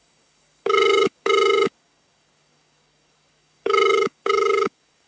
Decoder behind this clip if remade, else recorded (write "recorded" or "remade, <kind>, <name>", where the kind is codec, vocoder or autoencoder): remade, codec, DAC